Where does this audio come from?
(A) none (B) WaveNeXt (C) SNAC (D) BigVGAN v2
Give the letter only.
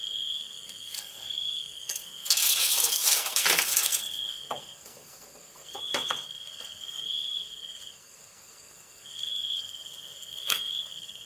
C